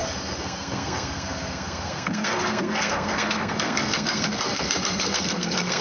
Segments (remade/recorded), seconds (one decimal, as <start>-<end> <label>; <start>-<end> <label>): 0.0-5.8 remade